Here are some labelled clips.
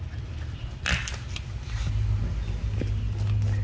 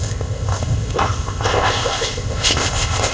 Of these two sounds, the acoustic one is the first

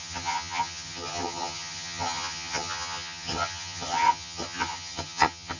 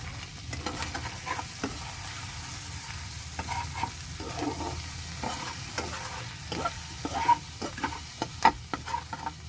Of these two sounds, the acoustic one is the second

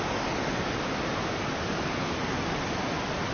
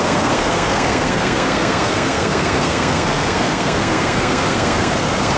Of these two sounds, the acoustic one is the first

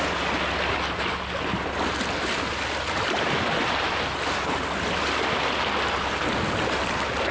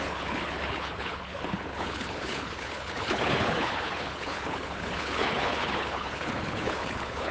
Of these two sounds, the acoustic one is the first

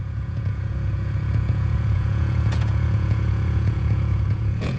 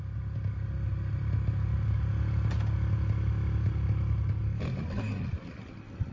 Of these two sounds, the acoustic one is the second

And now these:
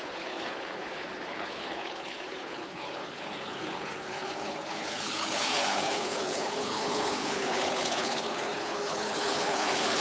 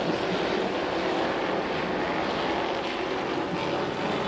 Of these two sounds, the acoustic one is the second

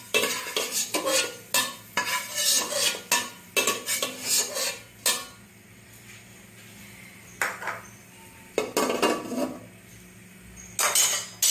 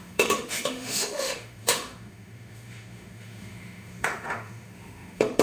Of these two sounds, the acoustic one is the first